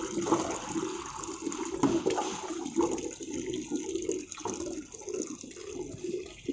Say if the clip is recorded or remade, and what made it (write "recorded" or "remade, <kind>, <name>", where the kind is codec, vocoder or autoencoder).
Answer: recorded